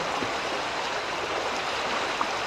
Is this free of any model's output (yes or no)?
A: yes